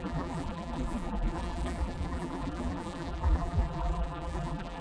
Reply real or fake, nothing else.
fake